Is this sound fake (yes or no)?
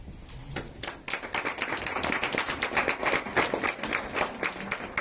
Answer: no